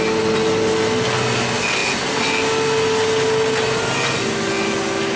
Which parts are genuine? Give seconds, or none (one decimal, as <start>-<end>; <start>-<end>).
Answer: 0.0-5.2